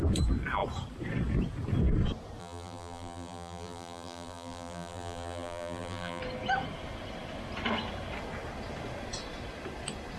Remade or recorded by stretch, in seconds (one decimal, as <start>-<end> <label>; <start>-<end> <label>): 0.0-2.4 recorded; 2.4-6.2 remade; 6.2-10.2 recorded